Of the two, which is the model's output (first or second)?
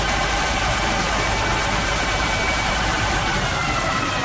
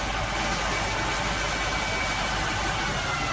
first